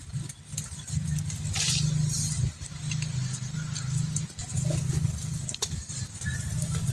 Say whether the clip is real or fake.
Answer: real